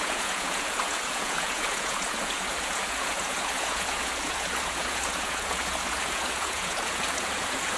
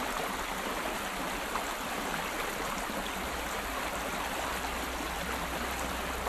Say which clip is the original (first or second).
second